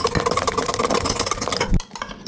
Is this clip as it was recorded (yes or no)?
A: yes